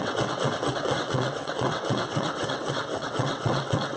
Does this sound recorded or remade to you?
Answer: remade